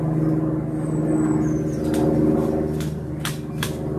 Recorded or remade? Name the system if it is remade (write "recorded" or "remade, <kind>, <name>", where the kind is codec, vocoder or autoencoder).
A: recorded